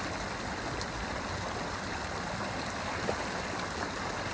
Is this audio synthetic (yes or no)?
no